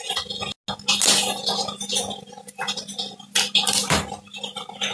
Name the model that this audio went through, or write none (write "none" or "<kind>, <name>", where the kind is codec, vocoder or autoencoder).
none